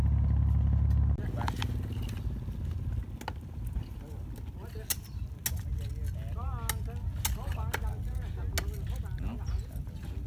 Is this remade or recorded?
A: recorded